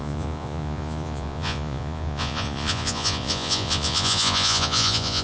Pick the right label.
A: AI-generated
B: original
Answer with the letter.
A